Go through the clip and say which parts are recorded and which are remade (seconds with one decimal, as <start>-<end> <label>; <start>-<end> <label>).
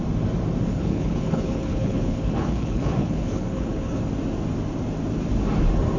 0.0-0.7 recorded; 0.7-4.0 remade; 4.0-6.0 recorded